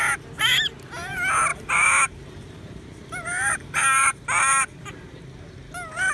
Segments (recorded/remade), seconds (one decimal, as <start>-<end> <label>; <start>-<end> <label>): 0.0-1.5 recorded; 1.5-5.2 remade; 5.2-6.1 recorded